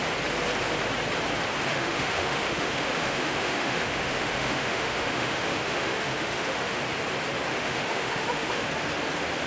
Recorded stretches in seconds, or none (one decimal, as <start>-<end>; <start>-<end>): 0.0-1.7; 6.8-7.5; 8.7-9.5